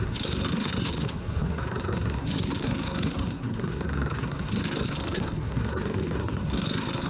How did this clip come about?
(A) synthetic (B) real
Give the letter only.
A